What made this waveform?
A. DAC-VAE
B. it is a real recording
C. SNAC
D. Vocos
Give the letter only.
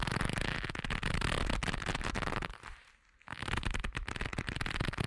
B